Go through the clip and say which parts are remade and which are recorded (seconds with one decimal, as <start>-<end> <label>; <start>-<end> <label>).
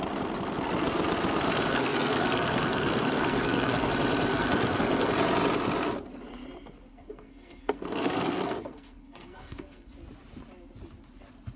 0.0-1.7 recorded; 1.7-3.9 remade; 3.9-4.3 recorded; 4.3-5.1 remade; 5.1-6.9 recorded; 6.9-9.9 remade; 9.9-11.6 recorded